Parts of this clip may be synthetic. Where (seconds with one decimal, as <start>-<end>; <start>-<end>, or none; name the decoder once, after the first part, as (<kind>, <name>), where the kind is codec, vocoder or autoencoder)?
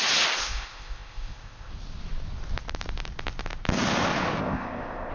0.4-1.7 (codec, ZipCodec); 4.4-5.1